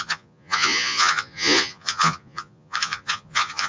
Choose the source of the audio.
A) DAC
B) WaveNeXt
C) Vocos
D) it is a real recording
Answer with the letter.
C